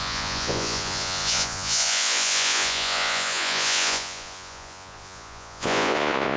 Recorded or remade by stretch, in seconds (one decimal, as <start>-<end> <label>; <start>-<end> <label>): 0.0-6.4 remade